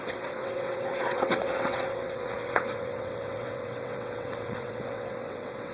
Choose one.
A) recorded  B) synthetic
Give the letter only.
B